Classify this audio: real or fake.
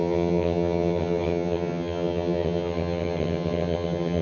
fake